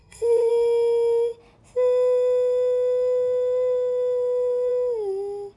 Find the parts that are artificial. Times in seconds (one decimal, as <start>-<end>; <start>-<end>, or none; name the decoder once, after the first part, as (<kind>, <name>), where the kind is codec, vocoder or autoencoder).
0.0-0.5 (codec, SNAC)